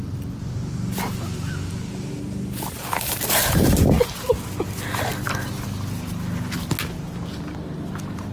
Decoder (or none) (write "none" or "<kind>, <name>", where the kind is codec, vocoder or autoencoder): none